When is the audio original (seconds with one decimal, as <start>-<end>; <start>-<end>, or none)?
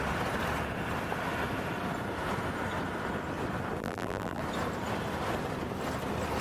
0.0-3.8; 4.4-6.4